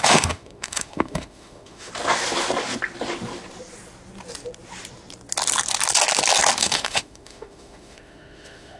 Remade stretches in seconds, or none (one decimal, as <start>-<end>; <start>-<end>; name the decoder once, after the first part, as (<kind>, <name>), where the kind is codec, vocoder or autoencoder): 0.0-1.9 (autoencoder, DAC-VAE); 6.6-8.8

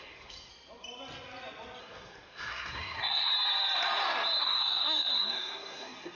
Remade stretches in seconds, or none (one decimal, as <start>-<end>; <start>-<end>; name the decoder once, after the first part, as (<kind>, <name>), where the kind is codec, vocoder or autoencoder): 0.0-0.5 (codec, SNAC); 1.8-3.3; 4.4-6.1

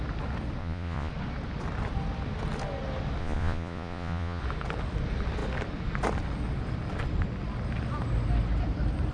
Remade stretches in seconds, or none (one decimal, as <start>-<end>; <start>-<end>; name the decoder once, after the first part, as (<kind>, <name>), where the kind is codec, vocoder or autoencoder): 0.6-1.1 (vocoder, Vocos); 3.2-4.4

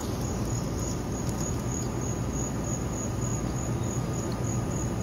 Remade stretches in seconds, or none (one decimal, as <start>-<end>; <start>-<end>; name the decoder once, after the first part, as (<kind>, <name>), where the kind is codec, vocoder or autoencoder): 0.0-1.5 (vocoder, BigVGAN v2); 3.3-3.8

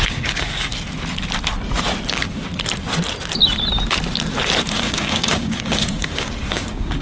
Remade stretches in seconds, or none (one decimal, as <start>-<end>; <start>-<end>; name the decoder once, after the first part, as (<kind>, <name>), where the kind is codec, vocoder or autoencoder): 0.0-0.7 (codec, DAC); 2.1-2.5; 4.7-7.0

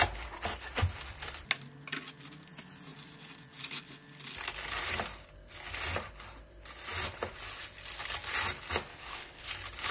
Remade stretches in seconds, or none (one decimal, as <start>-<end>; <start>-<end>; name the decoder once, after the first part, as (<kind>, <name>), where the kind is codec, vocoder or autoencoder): 8.9-9.5 (codec, HILCodec)